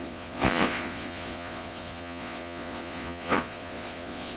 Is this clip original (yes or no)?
no